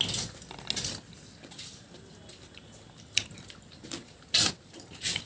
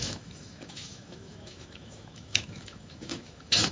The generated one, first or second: second